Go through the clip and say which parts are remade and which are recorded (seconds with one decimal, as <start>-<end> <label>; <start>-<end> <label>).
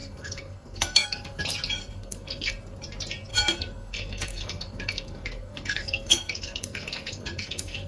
0.0-1.4 remade; 1.4-1.8 recorded; 1.8-2.5 remade; 2.5-3.3 recorded; 3.3-7.9 remade